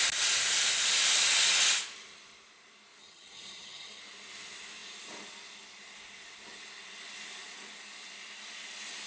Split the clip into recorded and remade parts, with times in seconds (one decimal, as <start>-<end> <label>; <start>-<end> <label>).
0.0-3.0 recorded; 3.0-4.0 remade; 4.0-9.1 recorded